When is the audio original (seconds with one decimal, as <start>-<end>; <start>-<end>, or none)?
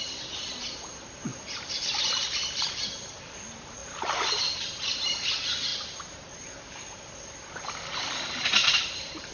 0.0-1.3; 2.0-3.8; 4.3-8.6